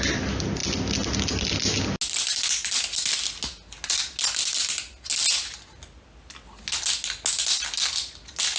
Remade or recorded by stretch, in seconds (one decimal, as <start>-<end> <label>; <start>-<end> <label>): 0.0-8.6 recorded